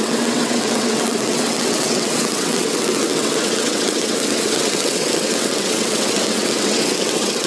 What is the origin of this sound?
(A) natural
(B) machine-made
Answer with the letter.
B